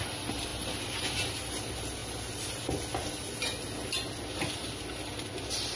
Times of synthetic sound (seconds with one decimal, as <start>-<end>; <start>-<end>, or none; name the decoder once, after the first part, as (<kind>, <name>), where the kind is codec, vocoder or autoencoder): none

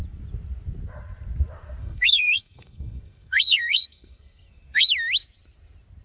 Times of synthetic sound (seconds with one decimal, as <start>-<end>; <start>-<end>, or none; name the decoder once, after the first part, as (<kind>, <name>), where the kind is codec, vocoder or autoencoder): 1.8-4.9 (codec, SNAC)

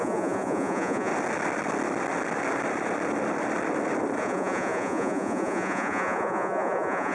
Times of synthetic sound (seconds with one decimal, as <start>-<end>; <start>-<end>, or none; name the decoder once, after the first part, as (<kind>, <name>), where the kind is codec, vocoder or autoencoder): 0.0-1.1 (vocoder, Vocos); 4.2-7.1

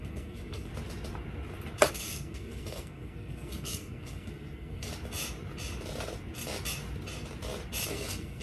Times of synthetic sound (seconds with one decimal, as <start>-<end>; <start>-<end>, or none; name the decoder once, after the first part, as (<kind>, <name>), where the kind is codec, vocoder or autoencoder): 0.0-0.7 (codec, SNAC); 1.9-4.9; 7.9-8.4

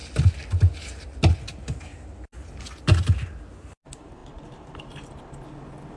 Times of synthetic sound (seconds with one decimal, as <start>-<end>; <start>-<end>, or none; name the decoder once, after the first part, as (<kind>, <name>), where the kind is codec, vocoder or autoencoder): none